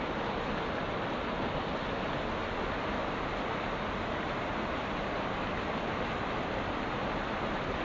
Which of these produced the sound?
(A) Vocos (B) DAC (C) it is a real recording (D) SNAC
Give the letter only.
C